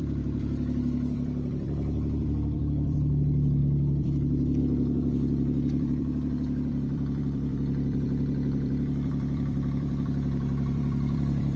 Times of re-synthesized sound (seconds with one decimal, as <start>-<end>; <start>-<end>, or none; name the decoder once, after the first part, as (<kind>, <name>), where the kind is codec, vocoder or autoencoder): 0.0-11.6 (vocoder, BigVGAN v2)